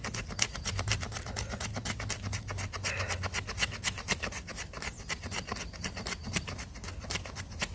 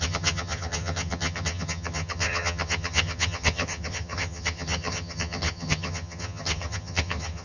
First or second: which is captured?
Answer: first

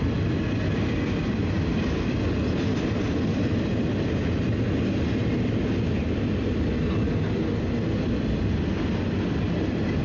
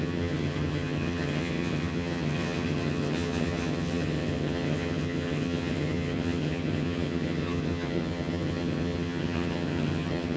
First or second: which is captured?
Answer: first